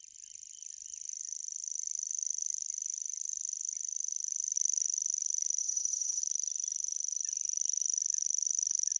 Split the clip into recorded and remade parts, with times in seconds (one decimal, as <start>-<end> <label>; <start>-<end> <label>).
0.0-5.6 recorded; 5.6-6.2 remade; 6.2-9.0 recorded

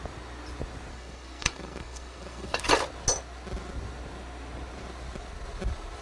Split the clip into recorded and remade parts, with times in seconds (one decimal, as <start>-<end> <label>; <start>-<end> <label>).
0.0-0.9 recorded; 0.9-2.6 remade; 2.6-6.0 recorded

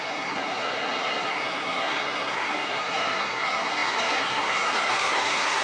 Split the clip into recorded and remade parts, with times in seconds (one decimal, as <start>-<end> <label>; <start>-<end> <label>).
0.0-5.6 remade

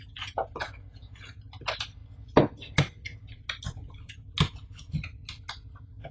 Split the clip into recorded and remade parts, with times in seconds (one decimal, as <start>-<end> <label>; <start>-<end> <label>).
0.0-1.4 remade; 1.4-6.1 recorded

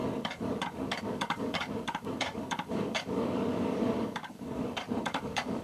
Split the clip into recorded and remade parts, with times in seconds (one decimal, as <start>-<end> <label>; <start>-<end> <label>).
0.0-5.6 remade

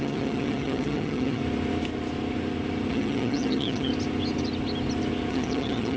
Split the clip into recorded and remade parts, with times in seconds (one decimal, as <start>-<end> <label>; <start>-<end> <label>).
0.0-1.4 remade; 1.4-2.9 recorded; 2.9-3.9 remade; 3.9-5.3 recorded; 5.3-6.0 remade

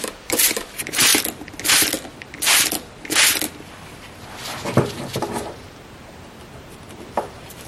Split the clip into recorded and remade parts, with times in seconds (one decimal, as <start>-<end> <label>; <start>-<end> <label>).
0.0-1.1 remade; 1.1-5.2 recorded; 5.2-7.7 remade